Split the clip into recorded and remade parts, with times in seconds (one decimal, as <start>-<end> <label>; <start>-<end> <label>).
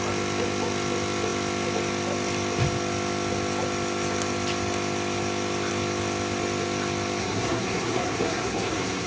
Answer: 0.0-7.2 recorded; 7.2-9.1 remade